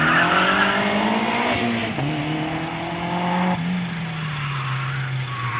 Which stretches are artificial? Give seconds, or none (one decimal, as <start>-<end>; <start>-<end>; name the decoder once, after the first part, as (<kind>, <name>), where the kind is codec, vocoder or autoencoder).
none